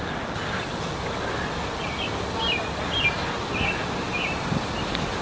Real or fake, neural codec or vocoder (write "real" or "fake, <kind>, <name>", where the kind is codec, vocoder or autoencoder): real